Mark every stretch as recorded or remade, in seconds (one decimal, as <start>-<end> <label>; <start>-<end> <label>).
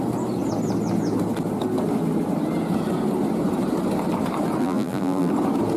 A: 0.0-4.6 recorded; 4.6-5.3 remade; 5.3-5.8 recorded